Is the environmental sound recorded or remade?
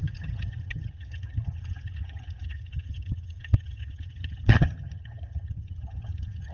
remade